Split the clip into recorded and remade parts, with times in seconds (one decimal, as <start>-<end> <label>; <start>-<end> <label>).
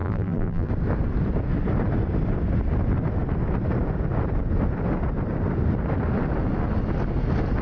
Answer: 0.0-0.7 remade; 0.7-7.6 recorded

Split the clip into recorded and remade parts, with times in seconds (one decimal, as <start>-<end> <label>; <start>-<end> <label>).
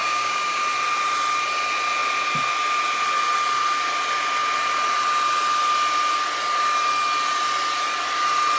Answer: 0.0-0.6 remade; 0.6-8.6 recorded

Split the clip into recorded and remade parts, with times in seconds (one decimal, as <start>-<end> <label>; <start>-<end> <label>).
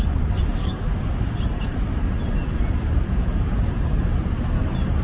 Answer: 0.0-0.5 recorded; 0.5-1.3 remade; 1.3-5.0 recorded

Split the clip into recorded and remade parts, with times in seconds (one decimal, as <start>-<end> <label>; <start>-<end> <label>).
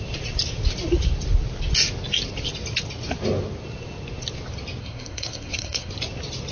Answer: 0.0-4.8 recorded; 4.8-5.9 remade; 5.9-6.5 recorded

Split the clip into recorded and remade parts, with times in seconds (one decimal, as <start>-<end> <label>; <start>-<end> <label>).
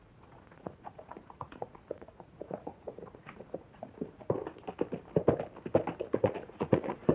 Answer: 0.0-4.3 remade; 4.3-6.0 recorded; 6.0-7.1 remade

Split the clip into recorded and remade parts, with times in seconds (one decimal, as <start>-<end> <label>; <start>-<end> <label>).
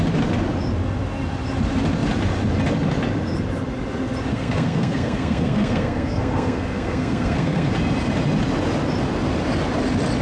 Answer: 0.0-4.3 recorded; 4.3-7.7 remade; 7.7-10.2 recorded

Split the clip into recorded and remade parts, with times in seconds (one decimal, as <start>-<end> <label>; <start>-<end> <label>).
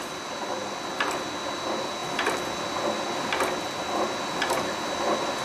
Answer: 0.0-5.4 recorded